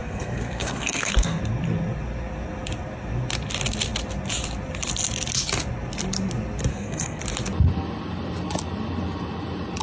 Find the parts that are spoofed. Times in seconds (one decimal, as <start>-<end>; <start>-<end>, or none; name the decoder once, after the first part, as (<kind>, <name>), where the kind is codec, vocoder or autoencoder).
0.0-1.4 (codec, SNAC); 6.7-7.2